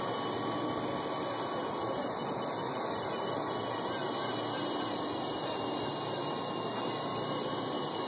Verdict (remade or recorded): recorded